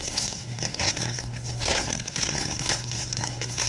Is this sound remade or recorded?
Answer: remade